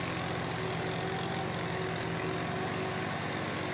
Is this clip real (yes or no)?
yes